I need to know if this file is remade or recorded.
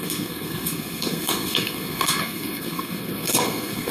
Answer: remade